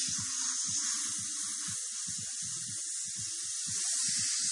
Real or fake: real